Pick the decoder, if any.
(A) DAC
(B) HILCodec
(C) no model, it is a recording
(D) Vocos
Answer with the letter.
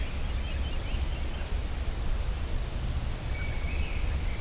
C